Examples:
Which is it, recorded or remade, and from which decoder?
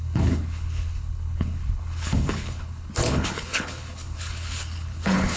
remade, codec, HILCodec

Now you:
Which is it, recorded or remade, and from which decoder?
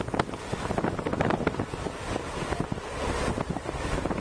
recorded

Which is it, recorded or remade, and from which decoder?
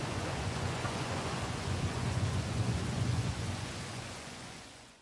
remade, vocoder, Vocos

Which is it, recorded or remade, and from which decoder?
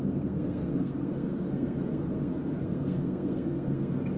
remade, codec, SNAC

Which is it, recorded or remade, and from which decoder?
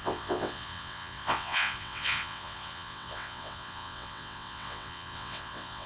remade, vocoder, WaveNeXt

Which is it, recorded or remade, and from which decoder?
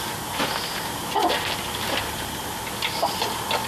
recorded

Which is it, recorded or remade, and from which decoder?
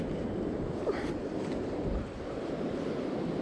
remade, vocoder, BigVGAN v2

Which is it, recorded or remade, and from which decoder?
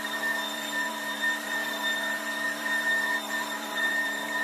remade, vocoder, BigVGAN v2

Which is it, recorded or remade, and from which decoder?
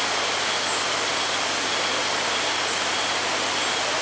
recorded